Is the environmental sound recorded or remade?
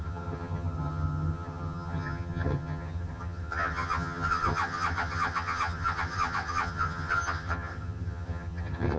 remade